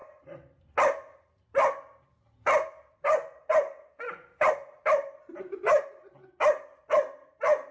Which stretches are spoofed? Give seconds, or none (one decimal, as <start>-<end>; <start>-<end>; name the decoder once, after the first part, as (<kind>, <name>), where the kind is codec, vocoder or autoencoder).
none